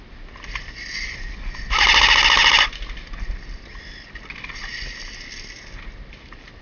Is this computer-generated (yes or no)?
no